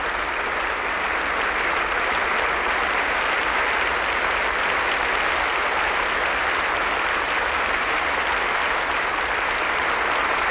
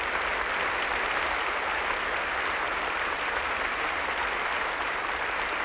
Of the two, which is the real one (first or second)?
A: first